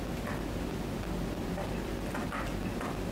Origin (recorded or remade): recorded